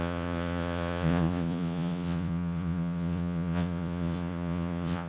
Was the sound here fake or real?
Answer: fake